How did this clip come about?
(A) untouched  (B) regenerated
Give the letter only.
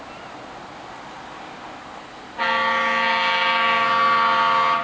A